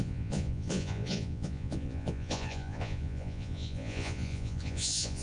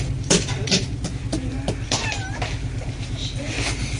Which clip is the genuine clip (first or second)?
second